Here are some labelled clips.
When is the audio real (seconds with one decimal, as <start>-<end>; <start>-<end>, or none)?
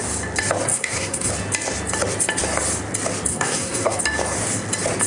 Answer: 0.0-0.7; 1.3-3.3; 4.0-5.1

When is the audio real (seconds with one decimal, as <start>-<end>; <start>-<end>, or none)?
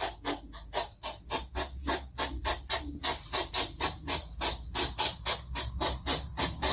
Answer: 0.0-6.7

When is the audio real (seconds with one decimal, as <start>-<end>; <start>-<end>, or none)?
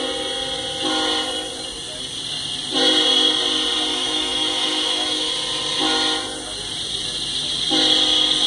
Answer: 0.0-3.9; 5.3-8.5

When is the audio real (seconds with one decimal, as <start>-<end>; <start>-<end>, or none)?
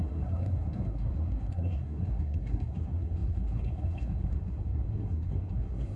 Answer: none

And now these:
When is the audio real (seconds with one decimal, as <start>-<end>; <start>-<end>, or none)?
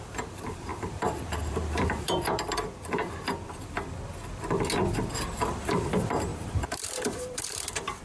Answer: 3.0-5.3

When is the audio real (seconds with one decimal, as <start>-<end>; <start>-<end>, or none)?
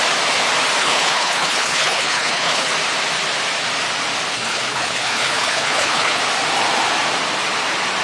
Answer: 0.0-0.8; 2.7-4.3; 6.2-8.0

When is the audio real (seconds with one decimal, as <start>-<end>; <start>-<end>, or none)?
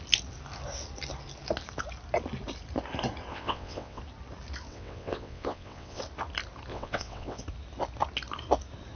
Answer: 0.0-3.3; 4.0-4.7; 6.0-6.7; 7.4-8.9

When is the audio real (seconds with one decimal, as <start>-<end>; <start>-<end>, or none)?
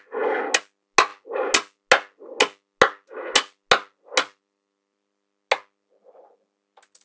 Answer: 0.0-7.0